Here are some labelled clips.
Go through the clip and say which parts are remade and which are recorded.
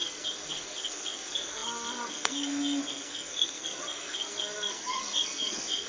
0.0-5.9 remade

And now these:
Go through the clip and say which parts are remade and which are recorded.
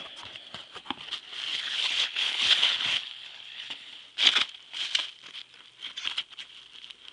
0.0-1.5 recorded; 1.5-4.0 remade; 4.0-7.1 recorded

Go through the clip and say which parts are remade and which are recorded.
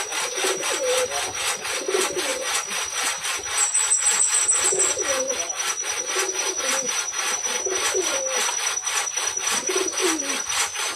0.0-11.0 recorded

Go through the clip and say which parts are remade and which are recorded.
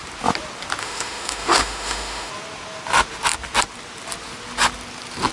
0.0-0.8 recorded; 0.8-2.3 remade; 2.3-5.3 recorded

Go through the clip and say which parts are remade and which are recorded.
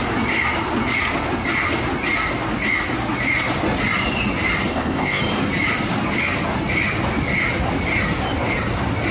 0.0-4.7 recorded; 4.7-5.2 remade; 5.2-9.1 recorded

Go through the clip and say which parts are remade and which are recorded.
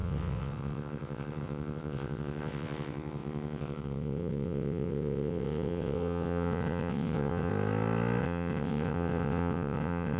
0.0-7.5 remade; 7.5-8.2 recorded; 8.2-10.2 remade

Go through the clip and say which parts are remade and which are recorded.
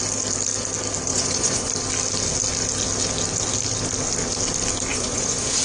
0.0-1.1 recorded; 1.1-1.7 remade; 1.7-4.9 recorded; 4.9-5.6 remade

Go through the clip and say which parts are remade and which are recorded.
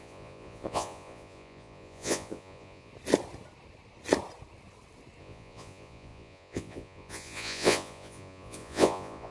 0.0-2.9 remade; 2.9-5.2 recorded; 5.2-9.3 remade